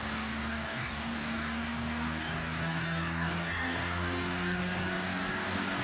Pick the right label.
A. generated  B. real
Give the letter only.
A